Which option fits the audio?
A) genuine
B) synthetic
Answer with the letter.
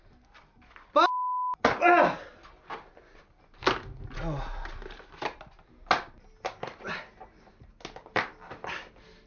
A